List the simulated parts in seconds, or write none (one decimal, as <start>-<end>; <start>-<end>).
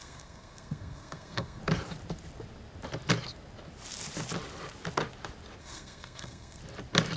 0.0-1.6; 5.6-6.6